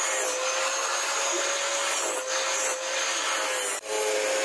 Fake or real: real